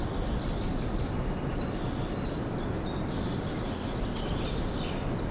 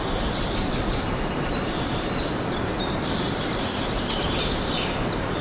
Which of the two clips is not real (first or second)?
second